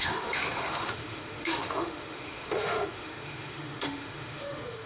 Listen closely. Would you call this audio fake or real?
fake